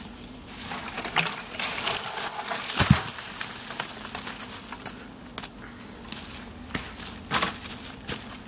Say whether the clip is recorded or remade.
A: recorded